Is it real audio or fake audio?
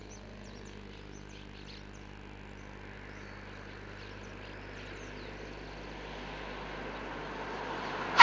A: real